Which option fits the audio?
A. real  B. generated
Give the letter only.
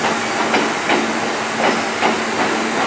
A